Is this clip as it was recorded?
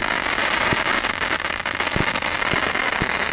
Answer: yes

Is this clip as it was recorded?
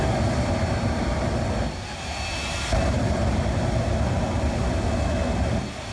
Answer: yes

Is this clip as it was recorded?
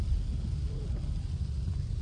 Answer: yes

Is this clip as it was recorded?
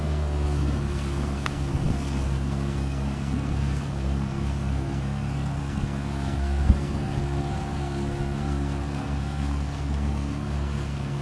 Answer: no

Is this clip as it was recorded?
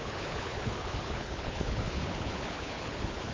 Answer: no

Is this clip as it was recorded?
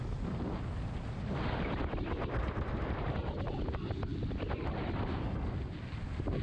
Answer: yes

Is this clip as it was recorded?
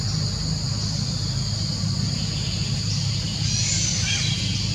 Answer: yes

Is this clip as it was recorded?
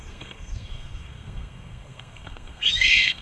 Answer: no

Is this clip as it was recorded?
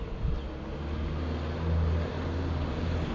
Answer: yes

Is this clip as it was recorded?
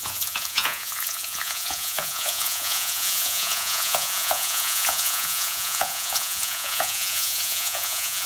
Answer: no